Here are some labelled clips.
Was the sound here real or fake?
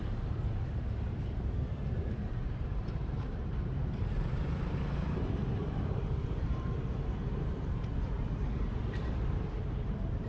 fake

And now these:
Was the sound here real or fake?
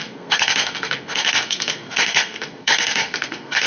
fake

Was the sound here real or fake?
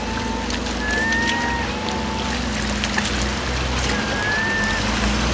real